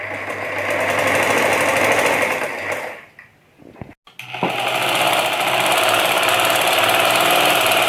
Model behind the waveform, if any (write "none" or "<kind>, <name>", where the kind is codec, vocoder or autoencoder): none